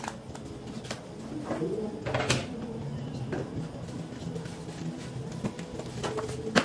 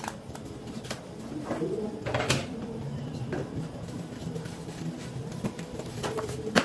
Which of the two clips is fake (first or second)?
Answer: second